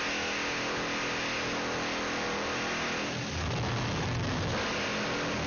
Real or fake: real